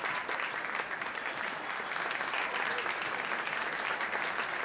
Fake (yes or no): no